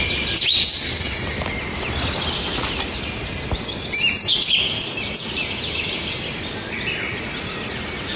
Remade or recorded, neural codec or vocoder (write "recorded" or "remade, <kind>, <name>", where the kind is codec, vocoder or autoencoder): recorded